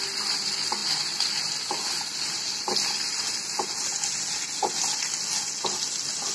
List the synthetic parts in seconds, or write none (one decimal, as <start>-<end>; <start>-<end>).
none